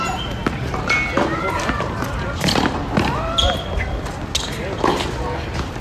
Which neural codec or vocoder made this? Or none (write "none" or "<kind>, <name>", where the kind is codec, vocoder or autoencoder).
none